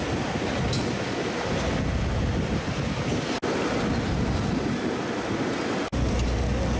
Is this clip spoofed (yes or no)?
no